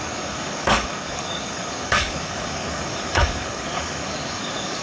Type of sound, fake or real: fake